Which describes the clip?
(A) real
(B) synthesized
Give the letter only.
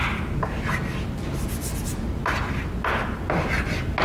A